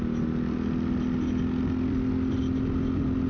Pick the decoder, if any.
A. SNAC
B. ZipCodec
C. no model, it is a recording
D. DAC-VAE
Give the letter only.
C